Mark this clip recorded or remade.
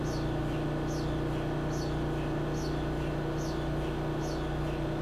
recorded